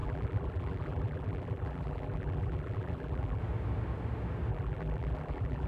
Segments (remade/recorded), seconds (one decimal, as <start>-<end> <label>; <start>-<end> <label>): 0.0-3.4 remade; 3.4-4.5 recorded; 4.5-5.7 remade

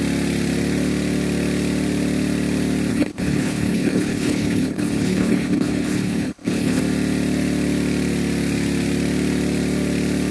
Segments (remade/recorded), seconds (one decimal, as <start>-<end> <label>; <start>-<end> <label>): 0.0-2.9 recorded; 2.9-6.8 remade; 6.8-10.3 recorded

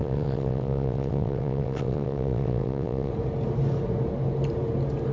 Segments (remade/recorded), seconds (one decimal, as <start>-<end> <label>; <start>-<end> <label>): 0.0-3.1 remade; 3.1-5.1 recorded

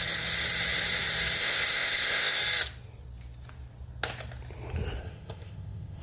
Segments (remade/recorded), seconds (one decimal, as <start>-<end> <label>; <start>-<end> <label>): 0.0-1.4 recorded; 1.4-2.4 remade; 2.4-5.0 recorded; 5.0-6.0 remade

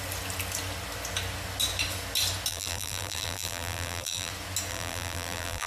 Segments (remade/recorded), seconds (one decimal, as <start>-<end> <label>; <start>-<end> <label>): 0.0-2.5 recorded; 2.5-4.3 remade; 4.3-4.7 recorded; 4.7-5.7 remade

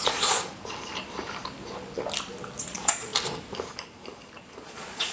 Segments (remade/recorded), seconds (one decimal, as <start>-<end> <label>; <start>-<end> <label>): 0.0-0.5 remade; 0.5-2.6 recorded; 2.6-3.1 remade; 3.1-4.4 recorded; 4.4-5.1 remade

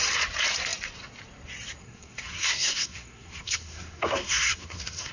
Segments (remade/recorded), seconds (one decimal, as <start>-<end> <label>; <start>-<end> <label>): 0.0-1.8 recorded; 1.8-5.1 remade

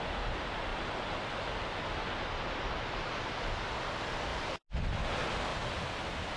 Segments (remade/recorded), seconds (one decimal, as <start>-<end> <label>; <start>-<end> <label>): 0.0-6.4 recorded